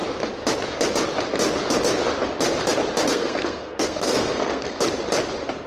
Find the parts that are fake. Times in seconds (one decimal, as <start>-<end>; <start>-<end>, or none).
3.1-4.8

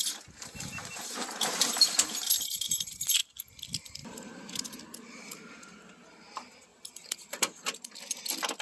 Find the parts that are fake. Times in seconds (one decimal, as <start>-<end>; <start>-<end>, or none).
0.8-3.0; 4.0-4.8; 6.7-7.4

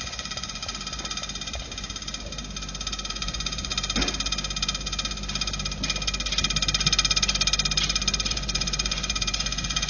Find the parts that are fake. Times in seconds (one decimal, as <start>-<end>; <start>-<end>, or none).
0.0-0.6; 3.1-3.7; 8.3-9.9